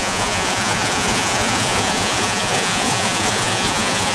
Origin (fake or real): fake